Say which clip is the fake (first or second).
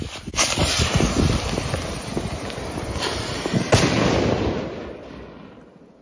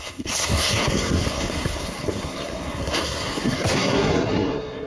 second